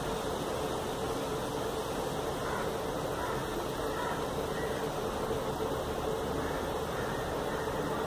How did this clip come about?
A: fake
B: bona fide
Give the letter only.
B